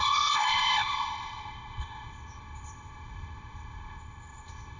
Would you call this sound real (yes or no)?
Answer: no